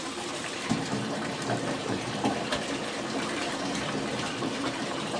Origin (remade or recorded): remade